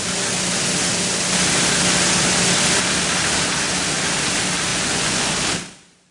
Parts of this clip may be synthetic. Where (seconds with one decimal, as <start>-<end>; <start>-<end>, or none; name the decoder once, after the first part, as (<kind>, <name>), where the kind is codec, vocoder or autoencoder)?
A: 4.7-5.3 (vocoder, Vocos)